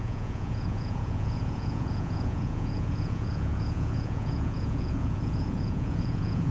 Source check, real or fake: fake